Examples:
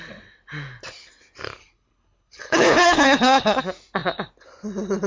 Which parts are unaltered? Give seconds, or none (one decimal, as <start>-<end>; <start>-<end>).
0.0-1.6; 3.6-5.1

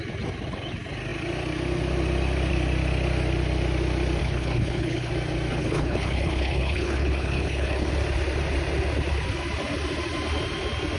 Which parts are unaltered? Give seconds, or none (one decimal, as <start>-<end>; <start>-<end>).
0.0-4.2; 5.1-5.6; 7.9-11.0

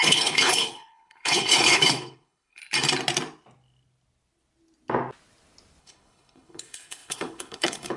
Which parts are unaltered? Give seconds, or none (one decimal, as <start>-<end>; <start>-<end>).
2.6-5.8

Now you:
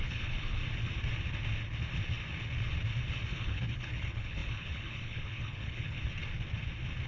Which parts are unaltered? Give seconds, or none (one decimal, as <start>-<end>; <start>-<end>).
0.6-3.3; 6.2-7.1

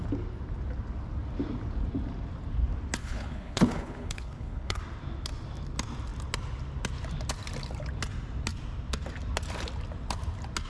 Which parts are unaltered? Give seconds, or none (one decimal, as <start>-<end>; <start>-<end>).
0.0-3.0; 4.8-10.7

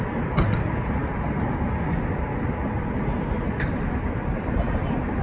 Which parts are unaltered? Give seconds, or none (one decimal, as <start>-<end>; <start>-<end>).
0.0-5.2

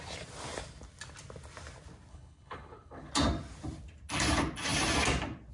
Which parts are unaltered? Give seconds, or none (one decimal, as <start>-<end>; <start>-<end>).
0.0-2.1; 3.1-5.5

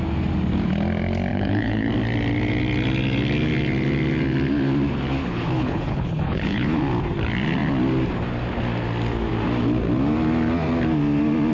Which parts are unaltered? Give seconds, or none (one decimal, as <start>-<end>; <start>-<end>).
0.0-1.3; 1.9-5.2; 6.8-11.5